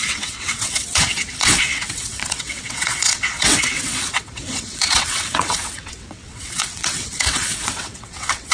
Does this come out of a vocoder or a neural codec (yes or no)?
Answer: yes